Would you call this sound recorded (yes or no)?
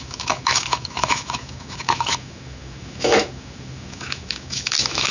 no